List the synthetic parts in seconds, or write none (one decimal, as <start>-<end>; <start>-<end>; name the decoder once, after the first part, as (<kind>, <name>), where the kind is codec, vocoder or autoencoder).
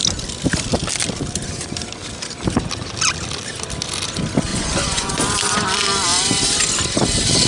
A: 4.5-5.1 (vocoder, Vocos)